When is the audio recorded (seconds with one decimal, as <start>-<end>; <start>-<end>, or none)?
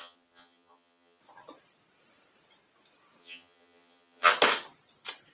1.2-3.2; 4.3-5.3